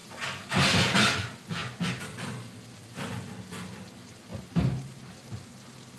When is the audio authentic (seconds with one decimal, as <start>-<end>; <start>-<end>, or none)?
0.0-6.0